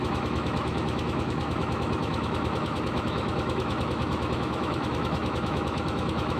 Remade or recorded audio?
remade